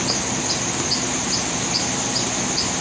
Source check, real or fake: real